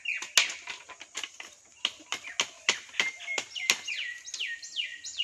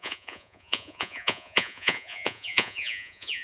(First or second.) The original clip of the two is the first